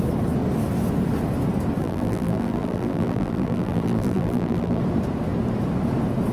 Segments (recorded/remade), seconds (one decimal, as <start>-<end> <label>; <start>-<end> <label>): 0.0-1.8 recorded; 1.8-4.8 remade; 4.8-6.3 recorded